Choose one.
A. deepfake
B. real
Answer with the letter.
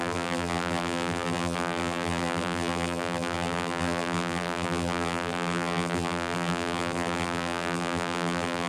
A